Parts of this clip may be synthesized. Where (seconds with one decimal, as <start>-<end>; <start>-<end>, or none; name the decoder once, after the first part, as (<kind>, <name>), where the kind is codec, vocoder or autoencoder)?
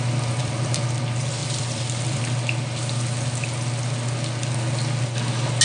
0.4-1.0 (vocoder, BigVGAN v2); 1.4-2.2